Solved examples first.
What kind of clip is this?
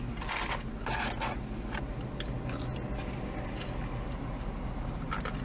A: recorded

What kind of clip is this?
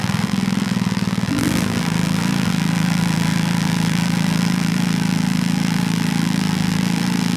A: remade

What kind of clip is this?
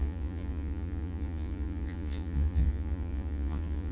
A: remade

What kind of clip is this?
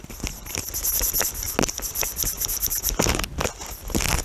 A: recorded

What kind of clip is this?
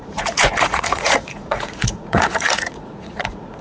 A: remade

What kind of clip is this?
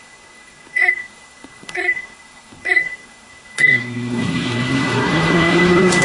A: remade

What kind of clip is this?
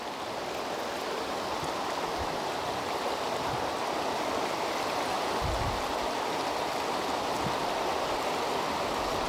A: recorded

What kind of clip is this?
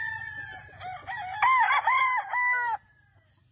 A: recorded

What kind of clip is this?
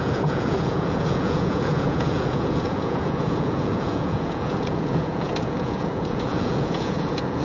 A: remade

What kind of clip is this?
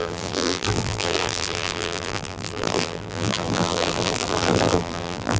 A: remade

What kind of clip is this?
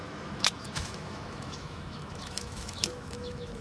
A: remade